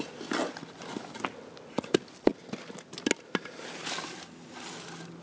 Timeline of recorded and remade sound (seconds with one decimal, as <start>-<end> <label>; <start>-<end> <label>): 0.0-5.2 recorded